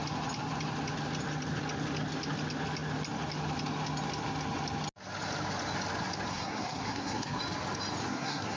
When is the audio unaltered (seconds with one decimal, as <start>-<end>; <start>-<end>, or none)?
0.0-6.3; 7.4-8.0

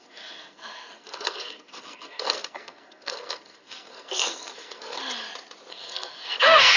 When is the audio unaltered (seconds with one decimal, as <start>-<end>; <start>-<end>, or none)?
5.0-5.7